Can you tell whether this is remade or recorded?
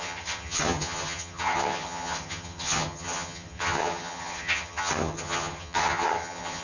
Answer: remade